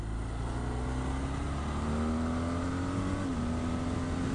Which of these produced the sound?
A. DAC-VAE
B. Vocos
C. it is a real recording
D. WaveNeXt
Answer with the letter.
C